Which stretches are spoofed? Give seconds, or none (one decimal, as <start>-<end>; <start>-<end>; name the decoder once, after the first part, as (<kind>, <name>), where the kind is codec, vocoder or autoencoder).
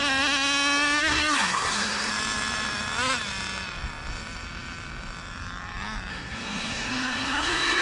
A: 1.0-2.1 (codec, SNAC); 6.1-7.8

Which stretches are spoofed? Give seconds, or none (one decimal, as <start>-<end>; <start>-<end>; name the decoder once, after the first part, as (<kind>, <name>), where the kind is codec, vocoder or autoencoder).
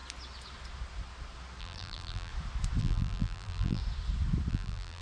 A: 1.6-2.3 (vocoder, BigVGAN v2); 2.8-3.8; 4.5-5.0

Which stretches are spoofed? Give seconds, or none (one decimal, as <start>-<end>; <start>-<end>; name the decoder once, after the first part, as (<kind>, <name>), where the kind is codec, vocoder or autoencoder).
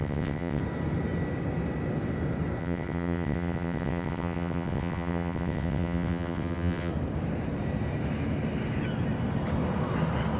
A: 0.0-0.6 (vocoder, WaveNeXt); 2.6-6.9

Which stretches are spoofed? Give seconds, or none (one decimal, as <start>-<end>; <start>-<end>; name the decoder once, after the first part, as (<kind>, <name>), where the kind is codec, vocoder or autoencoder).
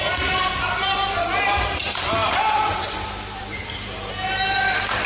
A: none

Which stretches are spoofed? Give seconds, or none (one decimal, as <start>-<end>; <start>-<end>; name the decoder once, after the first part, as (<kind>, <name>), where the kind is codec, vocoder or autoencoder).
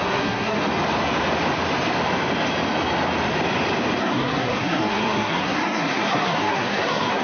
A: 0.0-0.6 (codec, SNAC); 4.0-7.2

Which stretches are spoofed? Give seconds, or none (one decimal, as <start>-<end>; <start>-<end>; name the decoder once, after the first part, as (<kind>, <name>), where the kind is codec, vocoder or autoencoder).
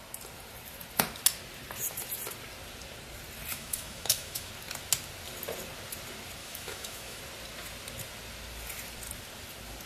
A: 3.5-4.5 (autoencoder, DAC-VAE); 6.4-7.2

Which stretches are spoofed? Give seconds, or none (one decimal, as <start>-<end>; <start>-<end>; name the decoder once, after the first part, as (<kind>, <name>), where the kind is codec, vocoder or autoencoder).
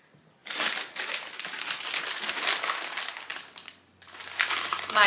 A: 3.3-5.1 (vocoder, BigVGAN v2)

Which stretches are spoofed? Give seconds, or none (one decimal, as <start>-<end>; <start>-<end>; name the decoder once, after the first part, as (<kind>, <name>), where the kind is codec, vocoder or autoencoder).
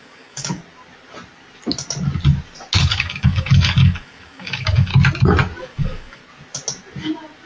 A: 0.0-0.6 (codec, DAC); 2.8-4.9; 5.6-6.2